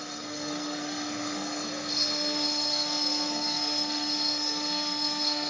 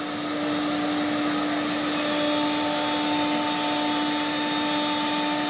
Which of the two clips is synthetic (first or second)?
first